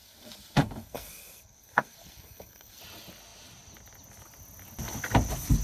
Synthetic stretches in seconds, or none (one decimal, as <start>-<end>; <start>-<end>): 0.0-2.8